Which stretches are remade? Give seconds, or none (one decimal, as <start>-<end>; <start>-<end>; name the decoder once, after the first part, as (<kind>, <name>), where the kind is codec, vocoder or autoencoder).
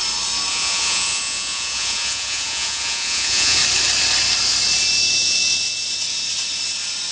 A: 0.5-3.6 (vocoder, Vocos)